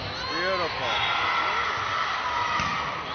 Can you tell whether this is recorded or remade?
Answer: recorded